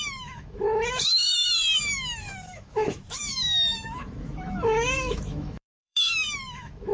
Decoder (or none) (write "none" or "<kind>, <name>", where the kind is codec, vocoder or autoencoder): autoencoder, DAC-VAE